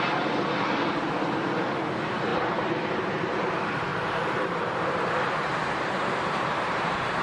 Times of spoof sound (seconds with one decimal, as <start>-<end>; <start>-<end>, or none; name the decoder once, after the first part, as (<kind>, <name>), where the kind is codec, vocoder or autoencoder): 2.3-3.5 (vocoder, BigVGAN v2); 3.9-7.2